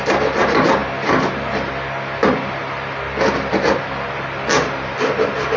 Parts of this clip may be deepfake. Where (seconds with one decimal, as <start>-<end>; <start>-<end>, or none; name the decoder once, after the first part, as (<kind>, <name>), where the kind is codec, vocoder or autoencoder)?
none